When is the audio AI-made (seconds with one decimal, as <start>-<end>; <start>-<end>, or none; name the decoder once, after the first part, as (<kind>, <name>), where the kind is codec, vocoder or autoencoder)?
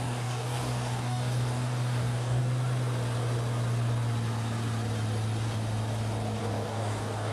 0.0-2.4 (codec, DAC); 6.4-7.3